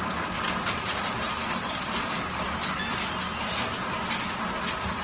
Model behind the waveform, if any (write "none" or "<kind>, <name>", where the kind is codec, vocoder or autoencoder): none